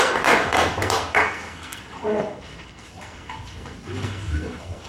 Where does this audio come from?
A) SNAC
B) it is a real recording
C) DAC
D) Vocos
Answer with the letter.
A